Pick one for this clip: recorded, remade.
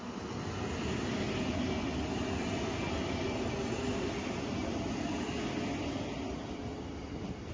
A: recorded